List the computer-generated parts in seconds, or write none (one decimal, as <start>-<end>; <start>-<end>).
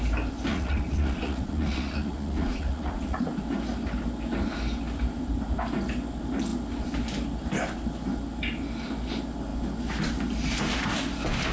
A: 0.5-3.3